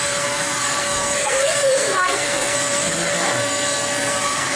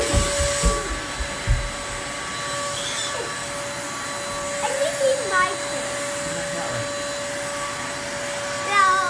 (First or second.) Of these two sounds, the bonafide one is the second